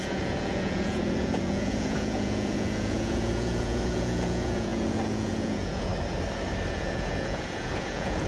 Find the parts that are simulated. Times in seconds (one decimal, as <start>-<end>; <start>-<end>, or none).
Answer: 0.0-5.9; 6.7-8.3